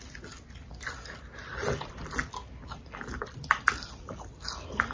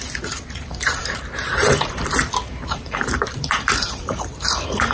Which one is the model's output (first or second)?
second